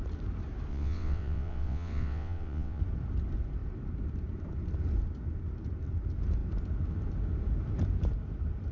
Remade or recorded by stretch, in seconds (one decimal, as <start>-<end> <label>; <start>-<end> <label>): 0.0-0.7 recorded; 0.7-2.8 remade; 2.8-8.7 recorded